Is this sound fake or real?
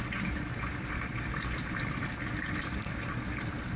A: real